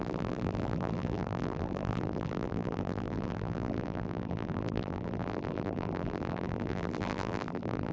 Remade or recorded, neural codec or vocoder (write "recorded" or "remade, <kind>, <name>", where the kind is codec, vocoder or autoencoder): remade, vocoder, BigVGAN v2